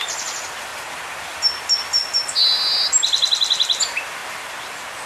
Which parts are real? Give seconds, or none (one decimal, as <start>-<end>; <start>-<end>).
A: 0.0-5.1